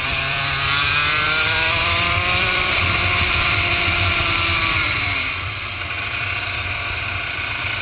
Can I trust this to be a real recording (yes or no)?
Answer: no